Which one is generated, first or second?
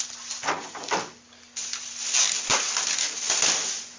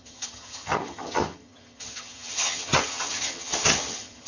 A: second